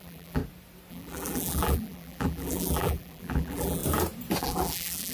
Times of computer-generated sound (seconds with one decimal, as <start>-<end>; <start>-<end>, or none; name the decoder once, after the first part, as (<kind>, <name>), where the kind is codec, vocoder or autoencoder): 0.0-0.4 (vocoder, BigVGAN v2); 0.9-3.8; 4.4-5.1